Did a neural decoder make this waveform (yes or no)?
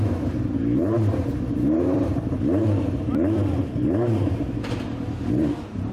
yes